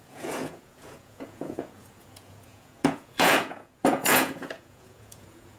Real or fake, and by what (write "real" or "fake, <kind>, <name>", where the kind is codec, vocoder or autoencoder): fake, vocoder, Vocos